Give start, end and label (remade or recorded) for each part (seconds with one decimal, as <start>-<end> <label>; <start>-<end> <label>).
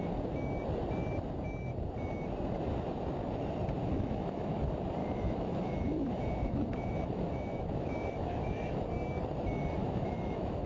0.0-3.8 recorded; 3.8-4.6 remade; 4.6-5.0 recorded; 5.0-8.8 remade; 8.8-9.8 recorded; 9.8-10.7 remade